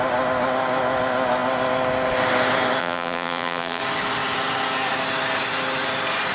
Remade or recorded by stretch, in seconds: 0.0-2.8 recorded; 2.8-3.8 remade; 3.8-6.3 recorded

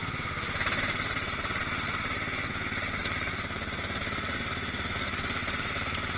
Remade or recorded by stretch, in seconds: 0.0-1.3 remade; 1.3-3.0 recorded; 3.0-4.9 remade; 4.9-5.4 recorded; 5.4-6.2 remade

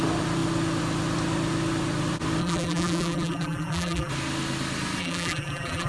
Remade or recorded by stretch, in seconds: 0.0-2.4 recorded; 2.4-4.1 remade; 4.1-5.0 recorded; 5.0-5.9 remade

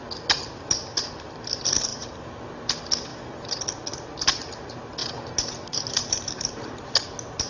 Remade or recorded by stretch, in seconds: 0.0-1.9 recorded; 1.9-2.4 remade; 2.4-3.1 recorded; 3.1-3.6 remade; 3.6-5.0 recorded; 5.0-6.9 remade; 6.9-7.5 recorded

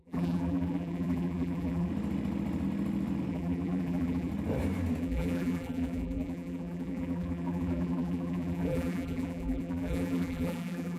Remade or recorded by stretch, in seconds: 0.0-1.9 remade; 1.9-3.3 recorded; 3.3-4.3 remade; 4.3-5.0 recorded; 5.0-11.0 remade

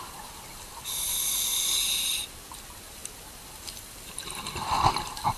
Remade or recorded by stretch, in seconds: 0.0-5.4 recorded

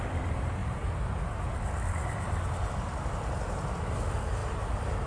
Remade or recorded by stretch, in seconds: 0.0-4.4 recorded; 4.4-5.1 remade

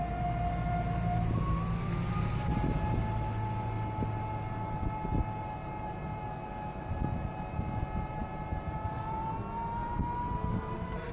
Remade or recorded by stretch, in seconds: 0.0-11.1 recorded